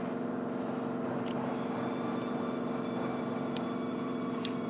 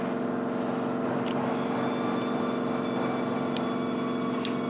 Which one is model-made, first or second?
first